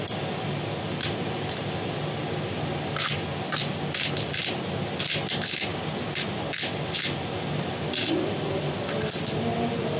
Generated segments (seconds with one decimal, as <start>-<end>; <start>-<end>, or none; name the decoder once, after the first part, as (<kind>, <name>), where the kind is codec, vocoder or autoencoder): none